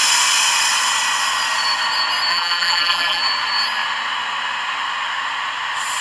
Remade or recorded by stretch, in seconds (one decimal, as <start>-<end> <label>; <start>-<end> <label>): 0.0-2.3 recorded; 2.3-3.2 remade; 3.2-6.0 recorded